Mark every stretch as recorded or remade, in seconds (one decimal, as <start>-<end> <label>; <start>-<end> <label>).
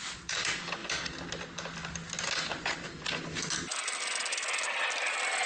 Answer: 0.0-5.5 recorded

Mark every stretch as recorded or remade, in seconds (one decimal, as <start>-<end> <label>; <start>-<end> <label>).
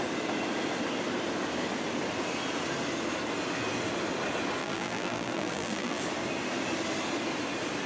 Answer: 0.0-4.6 recorded; 4.6-6.0 remade; 6.0-7.9 recorded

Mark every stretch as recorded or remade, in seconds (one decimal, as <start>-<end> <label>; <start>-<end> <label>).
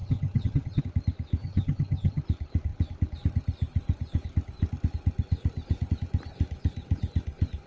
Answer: 0.0-0.8 remade; 0.8-1.4 recorded; 1.4-2.2 remade; 2.2-7.7 recorded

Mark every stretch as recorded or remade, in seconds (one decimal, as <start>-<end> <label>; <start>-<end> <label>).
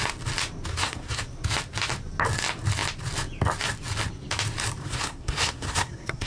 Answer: 0.0-0.7 recorded; 0.7-1.2 remade; 1.2-4.8 recorded; 4.8-6.3 remade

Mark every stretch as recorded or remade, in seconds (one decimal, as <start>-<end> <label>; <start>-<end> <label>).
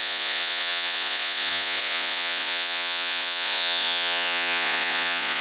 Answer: 0.0-5.4 remade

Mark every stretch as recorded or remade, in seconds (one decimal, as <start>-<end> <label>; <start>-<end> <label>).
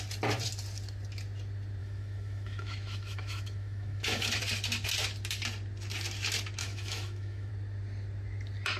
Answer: 0.0-1.8 recorded; 1.8-4.4 remade; 4.4-6.6 recorded; 6.6-7.5 remade; 7.5-8.8 recorded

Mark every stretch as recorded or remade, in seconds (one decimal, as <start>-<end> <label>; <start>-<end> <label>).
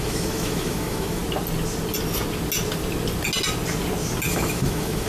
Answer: 0.0-1.2 remade; 1.2-4.3 recorded; 4.3-5.1 remade